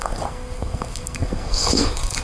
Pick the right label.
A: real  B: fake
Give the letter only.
B